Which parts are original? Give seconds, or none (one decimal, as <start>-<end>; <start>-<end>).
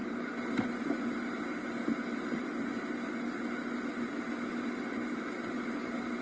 0.0-6.2